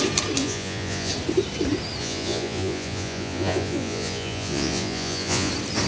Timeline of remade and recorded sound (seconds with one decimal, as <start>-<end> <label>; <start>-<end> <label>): 0.0-0.4 recorded; 0.4-1.1 remade; 1.1-2.0 recorded; 2.0-5.5 remade; 5.5-5.9 recorded